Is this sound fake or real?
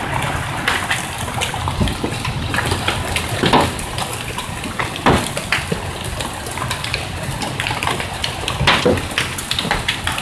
real